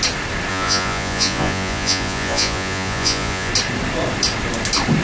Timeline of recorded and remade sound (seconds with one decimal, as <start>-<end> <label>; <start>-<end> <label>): 0.0-0.5 recorded; 0.5-3.5 remade; 3.5-5.0 recorded